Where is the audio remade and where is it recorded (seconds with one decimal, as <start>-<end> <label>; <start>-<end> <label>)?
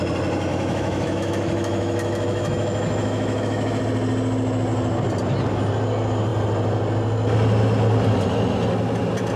0.0-0.5 recorded; 0.5-3.8 remade; 3.8-9.4 recorded